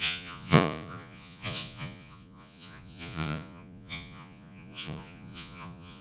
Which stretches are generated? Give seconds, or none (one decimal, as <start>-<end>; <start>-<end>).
0.0-6.0